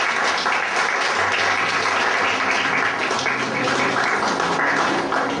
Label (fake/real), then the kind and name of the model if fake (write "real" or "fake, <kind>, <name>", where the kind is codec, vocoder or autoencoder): real